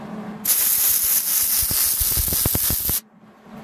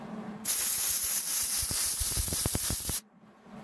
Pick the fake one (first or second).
second